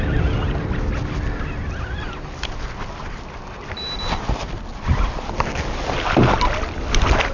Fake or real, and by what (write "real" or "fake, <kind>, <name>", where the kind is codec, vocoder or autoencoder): real